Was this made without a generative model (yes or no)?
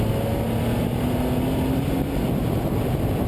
yes